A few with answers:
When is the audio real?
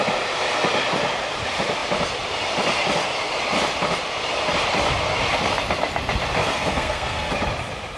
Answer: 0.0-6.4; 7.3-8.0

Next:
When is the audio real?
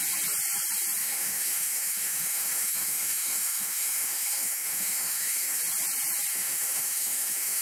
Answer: 0.0-1.0; 5.6-6.3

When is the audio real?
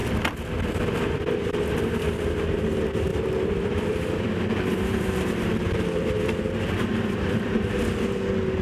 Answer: 1.5-3.1; 7.7-8.6